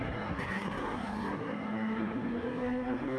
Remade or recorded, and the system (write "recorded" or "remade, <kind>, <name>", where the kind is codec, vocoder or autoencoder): remade, codec, SNAC